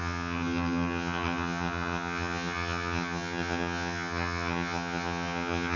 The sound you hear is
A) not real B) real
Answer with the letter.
A